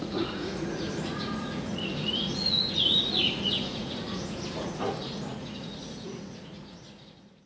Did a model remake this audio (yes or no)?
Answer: yes